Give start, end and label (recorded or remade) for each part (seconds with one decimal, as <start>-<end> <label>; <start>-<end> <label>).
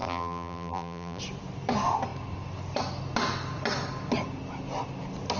0.0-1.2 remade; 1.2-5.4 recorded